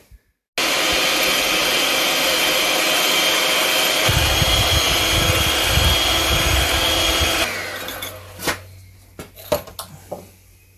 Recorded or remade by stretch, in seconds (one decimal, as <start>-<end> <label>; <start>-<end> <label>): 0.0-10.8 recorded